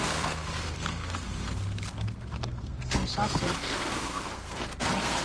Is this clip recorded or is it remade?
remade